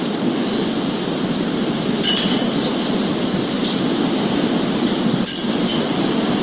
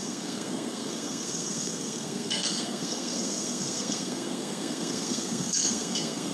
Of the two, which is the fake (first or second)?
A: second